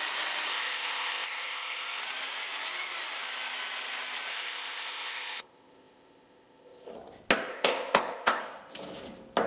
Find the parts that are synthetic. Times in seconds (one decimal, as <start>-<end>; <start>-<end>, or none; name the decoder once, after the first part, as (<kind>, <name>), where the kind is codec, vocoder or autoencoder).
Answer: 0.5-2.0 (codec, ZipCodec); 4.3-6.9; 7.5-8.4